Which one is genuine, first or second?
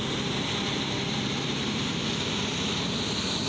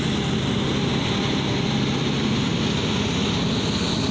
second